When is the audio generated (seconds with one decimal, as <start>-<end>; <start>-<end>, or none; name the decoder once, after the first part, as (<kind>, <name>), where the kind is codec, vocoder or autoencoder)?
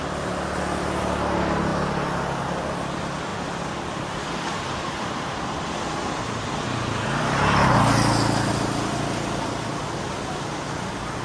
none